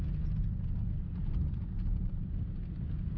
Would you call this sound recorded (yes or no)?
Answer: yes